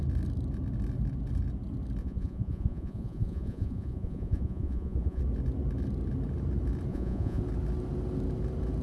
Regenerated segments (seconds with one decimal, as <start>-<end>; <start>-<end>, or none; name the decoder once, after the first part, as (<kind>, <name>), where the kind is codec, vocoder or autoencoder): 2.0-5.2 (vocoder, Vocos); 6.9-7.4